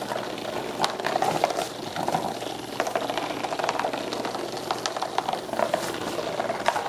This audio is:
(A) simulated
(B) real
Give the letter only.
B